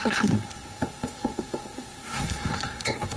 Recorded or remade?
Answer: remade